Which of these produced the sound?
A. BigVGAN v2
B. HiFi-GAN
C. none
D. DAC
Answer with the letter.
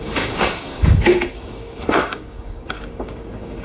D